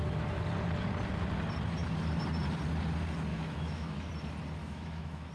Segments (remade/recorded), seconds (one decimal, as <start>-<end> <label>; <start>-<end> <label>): 0.0-3.3 recorded; 3.3-4.1 remade; 4.1-4.6 recorded; 4.6-5.3 remade